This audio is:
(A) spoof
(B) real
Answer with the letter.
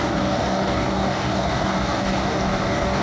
A